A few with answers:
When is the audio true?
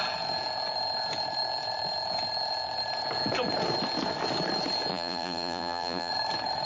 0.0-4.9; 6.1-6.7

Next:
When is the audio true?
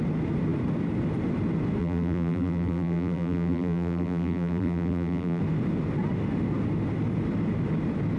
0.0-1.8; 5.4-8.2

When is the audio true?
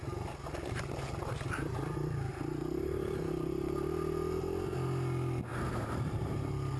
0.0-2.3; 3.3-5.5; 6.3-6.8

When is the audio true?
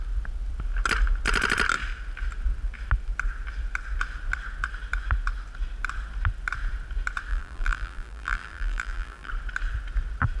0.0-7.3; 9.3-10.4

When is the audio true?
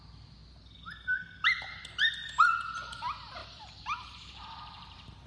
0.0-3.4